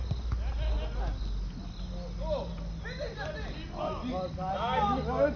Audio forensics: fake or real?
real